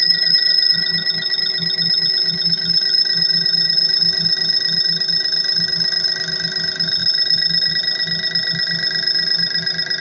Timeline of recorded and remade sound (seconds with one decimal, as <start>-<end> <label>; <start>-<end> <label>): 0.0-10.0 recorded